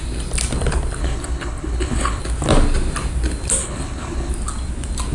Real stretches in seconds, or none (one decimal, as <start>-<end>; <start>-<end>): 0.0-1.0; 2.2-3.6; 4.3-5.1